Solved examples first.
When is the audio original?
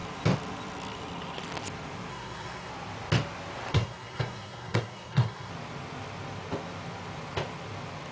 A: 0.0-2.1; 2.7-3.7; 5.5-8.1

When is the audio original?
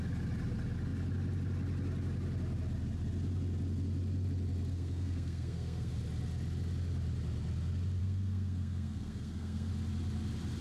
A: 0.0-4.7; 5.9-8.0; 9.7-10.6